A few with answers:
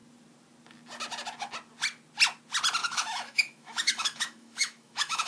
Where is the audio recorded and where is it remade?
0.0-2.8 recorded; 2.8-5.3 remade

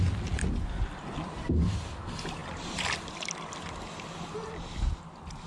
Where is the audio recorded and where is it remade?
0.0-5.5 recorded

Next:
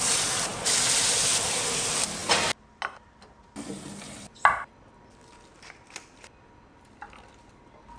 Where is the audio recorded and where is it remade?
0.0-8.0 recorded

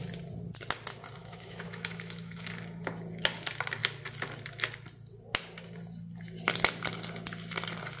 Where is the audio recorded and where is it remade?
0.0-1.2 recorded; 1.2-2.5 remade; 2.5-8.0 recorded

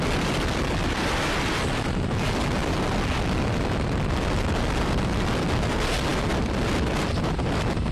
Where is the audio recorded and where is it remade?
0.0-7.9 recorded